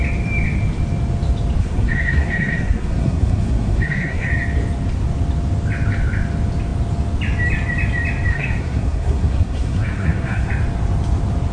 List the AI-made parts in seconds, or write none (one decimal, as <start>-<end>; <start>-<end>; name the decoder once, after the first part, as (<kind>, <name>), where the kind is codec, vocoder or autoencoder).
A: 1.6-4.3 (codec, SNAC); 8.3-10.5